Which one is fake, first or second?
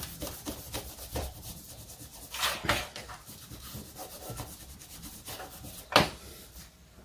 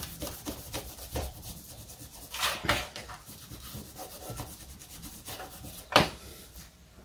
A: second